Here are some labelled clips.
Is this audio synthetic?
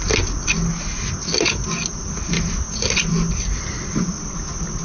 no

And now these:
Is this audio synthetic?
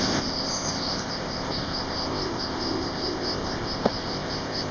yes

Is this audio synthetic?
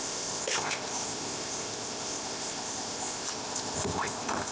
yes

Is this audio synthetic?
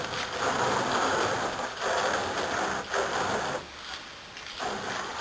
no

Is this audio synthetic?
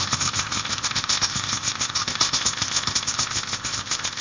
yes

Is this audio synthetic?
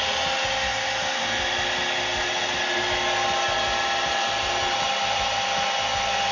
no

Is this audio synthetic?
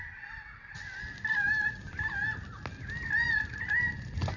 no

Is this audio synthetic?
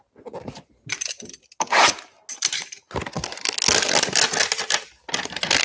no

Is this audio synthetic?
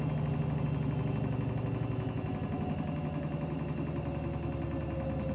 no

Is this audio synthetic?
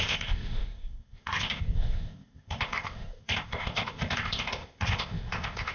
yes